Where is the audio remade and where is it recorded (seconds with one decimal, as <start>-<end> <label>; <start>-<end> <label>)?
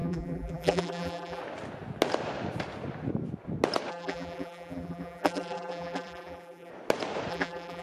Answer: 0.0-1.4 remade; 1.4-3.9 recorded; 3.9-6.7 remade; 6.7-7.3 recorded; 7.3-7.8 remade